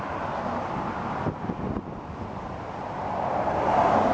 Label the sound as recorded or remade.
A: recorded